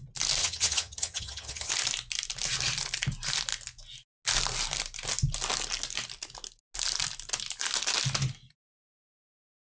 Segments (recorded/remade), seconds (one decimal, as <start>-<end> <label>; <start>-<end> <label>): 0.0-0.4 recorded; 0.4-1.7 remade; 1.7-9.6 recorded